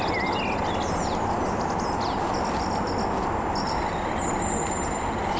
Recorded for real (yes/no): yes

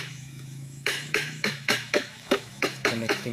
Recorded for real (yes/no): no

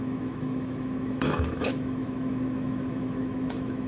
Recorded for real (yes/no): no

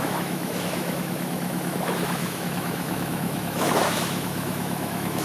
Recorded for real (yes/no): no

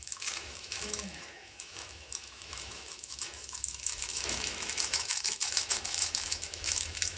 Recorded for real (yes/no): no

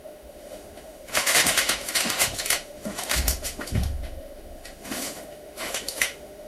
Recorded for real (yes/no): no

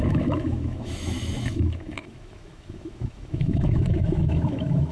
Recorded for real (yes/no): no